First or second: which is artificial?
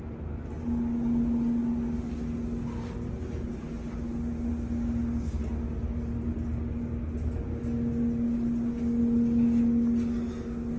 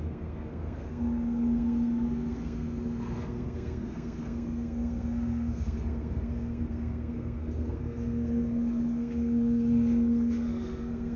second